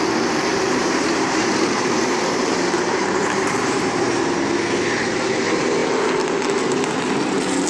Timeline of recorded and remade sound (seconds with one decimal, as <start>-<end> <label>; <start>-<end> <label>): 0.0-0.5 recorded; 0.5-4.5 remade; 4.5-7.7 recorded